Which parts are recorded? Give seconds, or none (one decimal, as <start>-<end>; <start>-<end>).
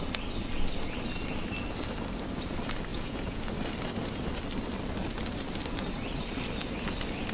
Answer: 0.0-2.9; 3.4-7.3